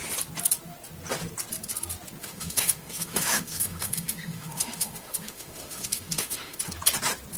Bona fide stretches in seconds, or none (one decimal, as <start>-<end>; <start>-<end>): 0.0-2.2; 6.6-7.4